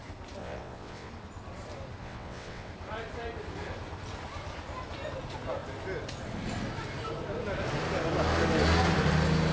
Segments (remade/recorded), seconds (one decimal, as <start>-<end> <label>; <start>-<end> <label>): 0.0-0.4 recorded; 0.4-1.1 remade; 1.1-2.0 recorded; 2.0-2.7 remade; 2.7-9.5 recorded